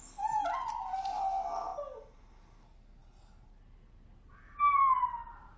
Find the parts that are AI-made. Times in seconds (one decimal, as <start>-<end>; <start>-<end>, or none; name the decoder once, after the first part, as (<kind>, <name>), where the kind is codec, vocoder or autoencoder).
none